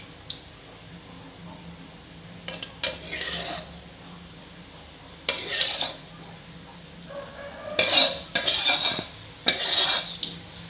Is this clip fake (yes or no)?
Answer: no